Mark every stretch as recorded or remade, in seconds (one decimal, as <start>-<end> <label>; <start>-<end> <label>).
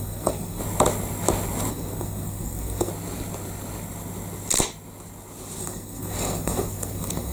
0.0-0.6 remade; 0.6-1.7 recorded; 1.7-2.9 remade; 2.9-5.6 recorded; 5.6-7.3 remade